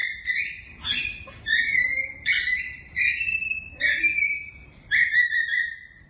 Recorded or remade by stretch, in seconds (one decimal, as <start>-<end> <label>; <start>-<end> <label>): 0.0-6.1 remade